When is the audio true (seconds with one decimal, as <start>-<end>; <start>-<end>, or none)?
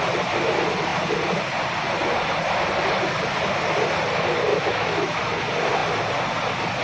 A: 0.0-4.5; 5.2-6.8